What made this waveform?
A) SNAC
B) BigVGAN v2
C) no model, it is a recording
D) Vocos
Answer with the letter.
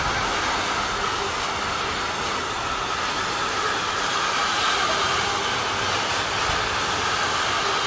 C